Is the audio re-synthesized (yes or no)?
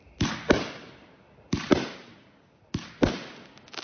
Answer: no